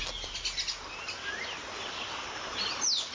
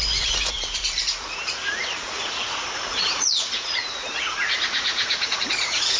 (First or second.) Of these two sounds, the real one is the first